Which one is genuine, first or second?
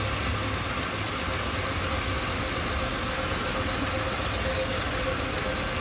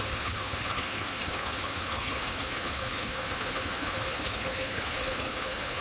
first